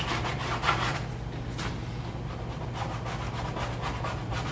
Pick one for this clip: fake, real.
real